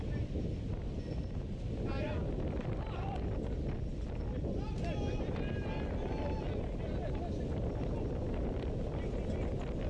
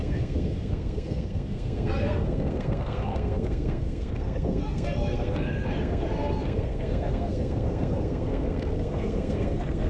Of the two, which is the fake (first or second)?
second